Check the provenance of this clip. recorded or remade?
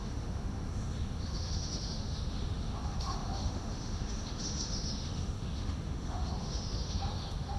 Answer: remade